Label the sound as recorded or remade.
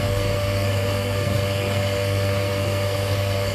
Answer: remade